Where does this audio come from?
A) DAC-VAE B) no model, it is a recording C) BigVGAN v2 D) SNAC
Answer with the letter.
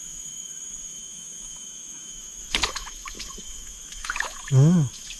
A